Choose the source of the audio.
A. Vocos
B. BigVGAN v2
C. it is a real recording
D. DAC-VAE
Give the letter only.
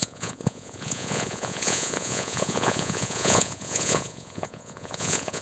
A